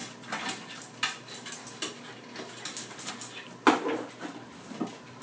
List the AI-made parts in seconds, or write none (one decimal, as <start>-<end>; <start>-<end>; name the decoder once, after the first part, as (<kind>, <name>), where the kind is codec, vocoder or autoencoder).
none